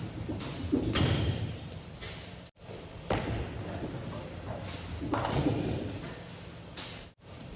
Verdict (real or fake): fake